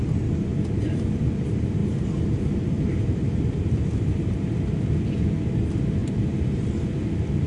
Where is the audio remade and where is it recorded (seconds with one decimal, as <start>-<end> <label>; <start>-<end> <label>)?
0.0-1.8 recorded; 1.8-4.9 remade; 4.9-6.0 recorded; 6.0-7.1 remade; 7.1-7.5 recorded